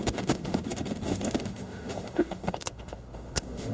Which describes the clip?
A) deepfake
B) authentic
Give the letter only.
A